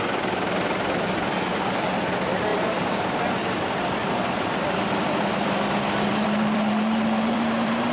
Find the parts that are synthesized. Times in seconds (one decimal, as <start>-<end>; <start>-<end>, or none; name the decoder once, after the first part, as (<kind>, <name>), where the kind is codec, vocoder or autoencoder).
4.0-4.6 (vocoder, BigVGAN v2); 6.1-7.9